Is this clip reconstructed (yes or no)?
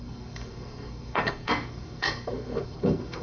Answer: yes